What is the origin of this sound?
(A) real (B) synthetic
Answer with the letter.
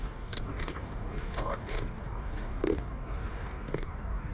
B